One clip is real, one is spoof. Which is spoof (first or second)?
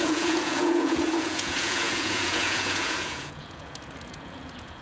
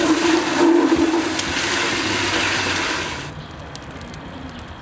first